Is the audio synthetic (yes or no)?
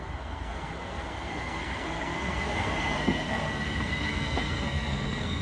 yes